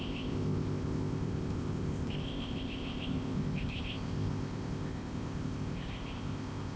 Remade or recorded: remade